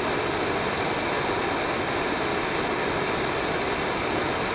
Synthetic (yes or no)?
no